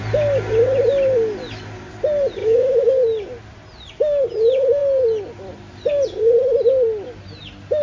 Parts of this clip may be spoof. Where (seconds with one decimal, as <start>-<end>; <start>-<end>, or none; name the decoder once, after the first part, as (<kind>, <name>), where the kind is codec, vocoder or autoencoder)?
2.4-2.9 (autoencoder, DAC-VAE)